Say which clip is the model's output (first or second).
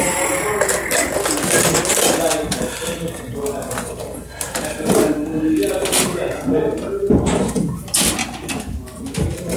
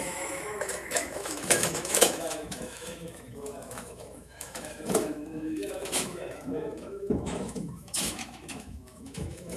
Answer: second